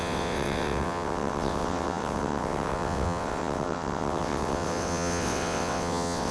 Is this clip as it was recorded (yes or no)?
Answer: no